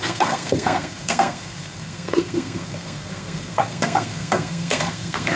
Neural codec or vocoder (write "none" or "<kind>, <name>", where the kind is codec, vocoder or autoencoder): codec, SNAC